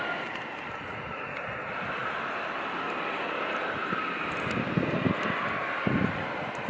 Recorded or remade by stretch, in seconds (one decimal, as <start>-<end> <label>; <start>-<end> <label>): 0.0-6.7 recorded